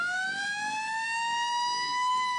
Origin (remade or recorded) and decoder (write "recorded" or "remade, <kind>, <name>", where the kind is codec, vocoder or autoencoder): recorded